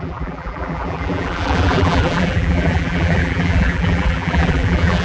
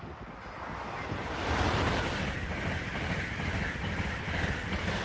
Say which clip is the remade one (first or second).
first